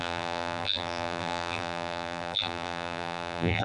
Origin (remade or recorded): remade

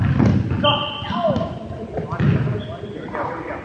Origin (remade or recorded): recorded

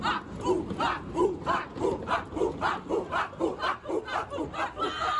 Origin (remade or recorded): recorded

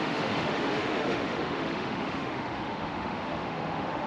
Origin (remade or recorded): remade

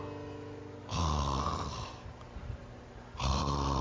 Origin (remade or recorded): recorded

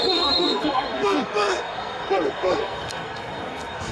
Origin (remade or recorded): remade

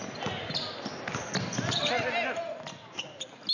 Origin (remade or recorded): recorded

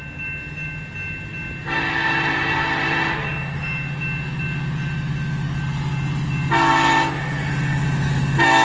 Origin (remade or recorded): recorded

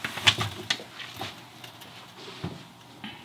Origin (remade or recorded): recorded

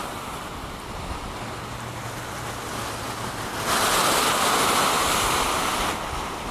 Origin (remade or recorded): recorded